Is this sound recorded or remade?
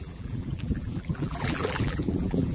remade